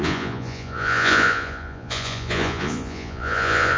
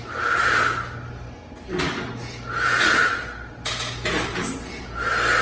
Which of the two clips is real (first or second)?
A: second